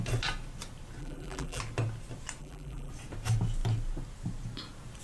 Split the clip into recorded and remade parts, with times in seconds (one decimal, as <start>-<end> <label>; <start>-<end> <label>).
0.0-1.0 recorded; 1.0-1.6 remade; 1.6-2.4 recorded; 2.4-2.9 remade; 2.9-5.0 recorded